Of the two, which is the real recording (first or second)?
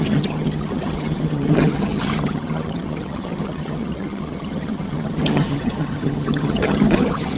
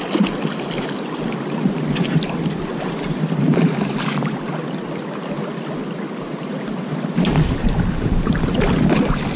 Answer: second